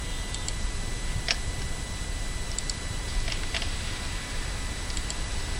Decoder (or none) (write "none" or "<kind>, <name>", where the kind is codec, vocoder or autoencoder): none